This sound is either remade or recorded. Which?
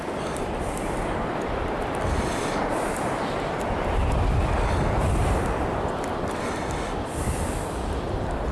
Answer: recorded